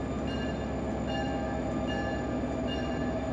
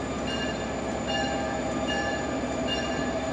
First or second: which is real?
first